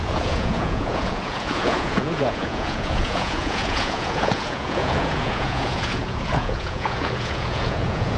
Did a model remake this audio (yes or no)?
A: yes